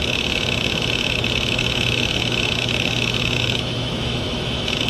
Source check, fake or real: fake